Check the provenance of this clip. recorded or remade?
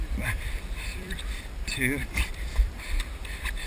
remade